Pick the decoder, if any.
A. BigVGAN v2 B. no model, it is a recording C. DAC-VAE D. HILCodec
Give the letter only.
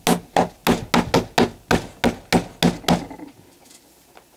B